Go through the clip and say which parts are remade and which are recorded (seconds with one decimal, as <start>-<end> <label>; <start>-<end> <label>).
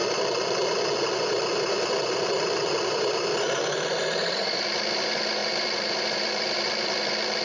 0.0-7.4 remade